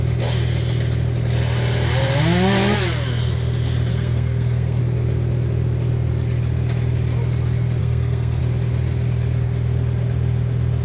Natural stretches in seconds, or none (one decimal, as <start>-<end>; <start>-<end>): 0.0-3.9; 4.8-7.8; 8.4-10.8